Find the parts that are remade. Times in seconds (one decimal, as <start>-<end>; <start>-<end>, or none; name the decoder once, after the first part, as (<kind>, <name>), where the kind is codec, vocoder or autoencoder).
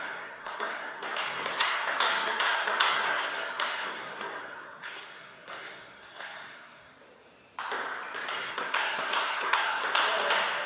0.0-6.9 (codec, SNAC); 8.3-9.8